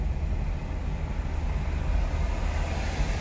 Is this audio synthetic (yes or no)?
no